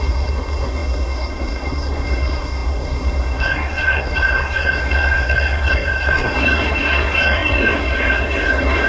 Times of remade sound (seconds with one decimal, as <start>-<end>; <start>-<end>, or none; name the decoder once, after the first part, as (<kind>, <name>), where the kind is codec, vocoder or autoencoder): 0.0-8.9 (codec, SNAC)